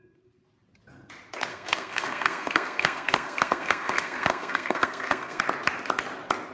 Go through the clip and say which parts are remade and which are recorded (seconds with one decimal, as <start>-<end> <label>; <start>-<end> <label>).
0.0-1.5 recorded; 1.5-5.4 remade; 5.4-6.5 recorded